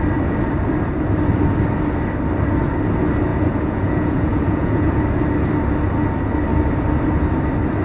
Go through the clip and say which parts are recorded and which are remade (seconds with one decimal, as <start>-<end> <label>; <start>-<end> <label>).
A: 0.0-3.3 recorded; 3.3-5.0 remade; 5.0-7.8 recorded

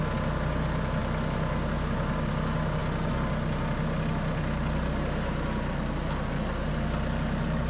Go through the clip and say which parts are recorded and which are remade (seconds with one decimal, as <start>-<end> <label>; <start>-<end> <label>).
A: 0.0-7.7 recorded

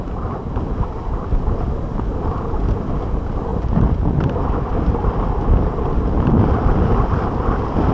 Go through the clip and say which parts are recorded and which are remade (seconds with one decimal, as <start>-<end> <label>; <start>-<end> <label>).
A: 0.0-3.5 remade; 3.5-4.2 recorded; 4.2-7.9 remade